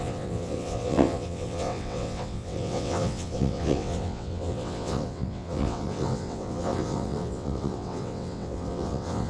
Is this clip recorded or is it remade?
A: remade